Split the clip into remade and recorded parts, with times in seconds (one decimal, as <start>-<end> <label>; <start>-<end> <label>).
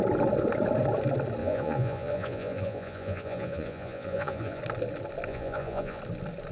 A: 0.0-1.4 recorded; 1.4-4.6 remade; 4.6-5.3 recorded; 5.3-6.0 remade; 6.0-6.5 recorded